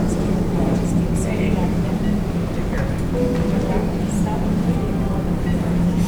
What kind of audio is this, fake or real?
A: real